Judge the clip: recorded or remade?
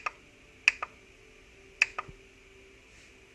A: recorded